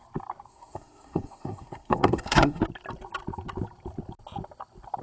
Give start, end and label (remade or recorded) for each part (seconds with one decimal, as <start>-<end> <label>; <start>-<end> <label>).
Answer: 0.0-0.5 recorded; 0.5-2.6 remade; 2.6-5.0 recorded